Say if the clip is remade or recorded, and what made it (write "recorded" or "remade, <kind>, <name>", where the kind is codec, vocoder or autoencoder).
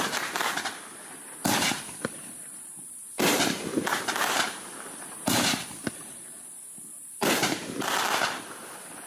remade, vocoder, BigVGAN v2